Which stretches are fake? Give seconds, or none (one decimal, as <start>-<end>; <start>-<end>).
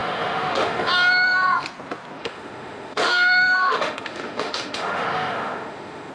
0.0-0.9; 2.2-6.1